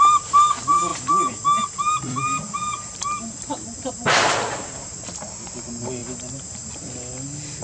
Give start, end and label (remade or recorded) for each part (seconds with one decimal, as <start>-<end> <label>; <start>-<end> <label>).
0.0-0.9 remade; 0.9-1.7 recorded; 1.7-7.6 remade